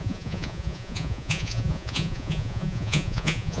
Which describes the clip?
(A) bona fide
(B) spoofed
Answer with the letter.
B